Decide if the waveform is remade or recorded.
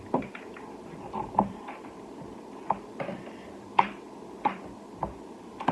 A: remade